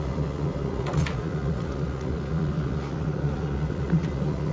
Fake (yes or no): yes